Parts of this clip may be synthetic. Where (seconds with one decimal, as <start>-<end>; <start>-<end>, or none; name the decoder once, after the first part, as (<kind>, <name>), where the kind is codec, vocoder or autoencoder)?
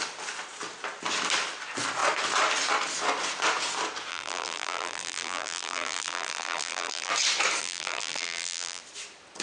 4.1-7.1 (vocoder, BigVGAN v2); 7.6-8.8